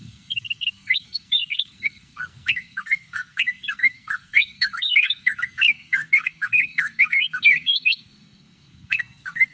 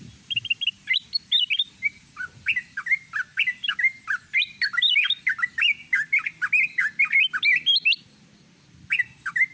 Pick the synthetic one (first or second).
first